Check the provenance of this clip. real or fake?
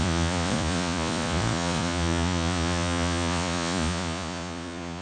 fake